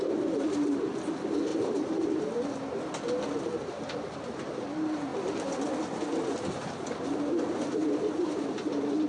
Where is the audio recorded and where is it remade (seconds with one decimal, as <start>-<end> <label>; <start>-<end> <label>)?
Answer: 0.0-1.5 recorded; 1.5-2.2 remade; 2.2-7.8 recorded; 7.8-8.5 remade; 8.5-9.1 recorded